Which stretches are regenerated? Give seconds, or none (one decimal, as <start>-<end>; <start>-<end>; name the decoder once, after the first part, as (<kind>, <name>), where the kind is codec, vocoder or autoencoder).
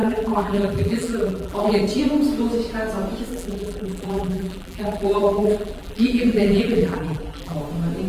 0.0-1.8 (vocoder, BigVGAN v2); 3.3-7.6